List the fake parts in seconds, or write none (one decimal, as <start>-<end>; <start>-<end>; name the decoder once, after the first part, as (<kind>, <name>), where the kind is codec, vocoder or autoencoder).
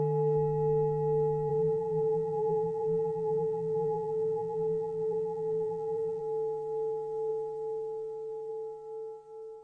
1.5-6.2 (vocoder, BigVGAN v2)